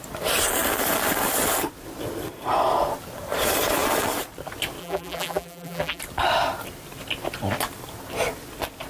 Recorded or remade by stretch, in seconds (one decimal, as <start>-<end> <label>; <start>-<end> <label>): 0.0-4.8 recorded; 4.8-6.0 remade; 6.0-8.9 recorded